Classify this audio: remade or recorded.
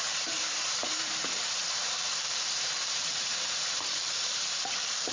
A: remade